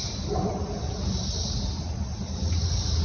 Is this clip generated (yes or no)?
no